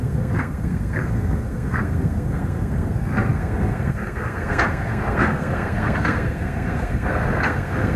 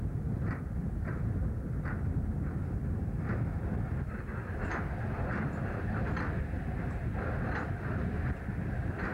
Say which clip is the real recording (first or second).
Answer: second